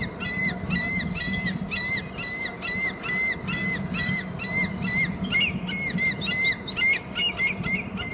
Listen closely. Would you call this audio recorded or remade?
recorded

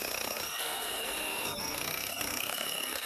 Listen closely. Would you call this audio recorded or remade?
remade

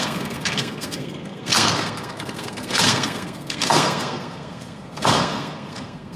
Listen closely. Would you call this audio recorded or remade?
remade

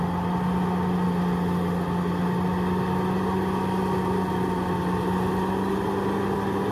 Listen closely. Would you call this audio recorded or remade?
recorded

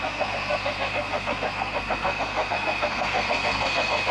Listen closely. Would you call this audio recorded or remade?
remade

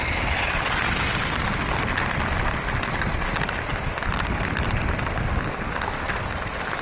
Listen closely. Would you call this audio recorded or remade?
recorded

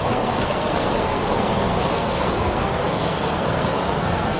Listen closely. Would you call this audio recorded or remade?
remade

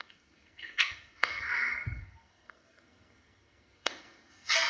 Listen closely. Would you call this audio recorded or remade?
remade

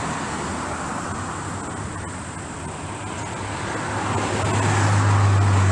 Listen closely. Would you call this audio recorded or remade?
recorded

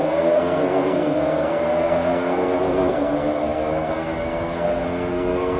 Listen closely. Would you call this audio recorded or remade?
remade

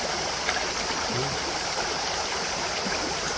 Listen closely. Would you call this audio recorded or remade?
recorded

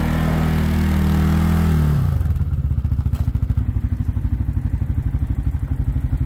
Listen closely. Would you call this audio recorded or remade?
recorded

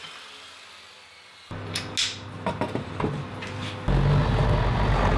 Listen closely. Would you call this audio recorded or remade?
recorded